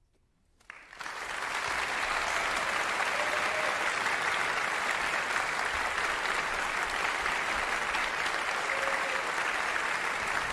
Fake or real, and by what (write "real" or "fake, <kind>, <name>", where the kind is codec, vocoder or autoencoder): real